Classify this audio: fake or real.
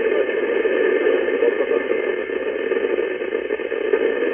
real